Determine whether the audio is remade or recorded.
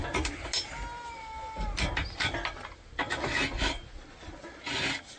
recorded